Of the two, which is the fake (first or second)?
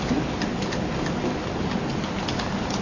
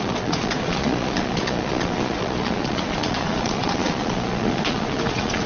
second